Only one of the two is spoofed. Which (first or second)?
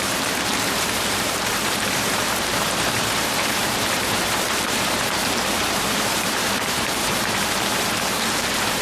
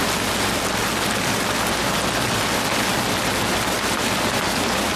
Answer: first